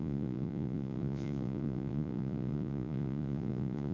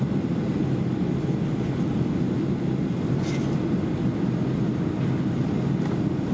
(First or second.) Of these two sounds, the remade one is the first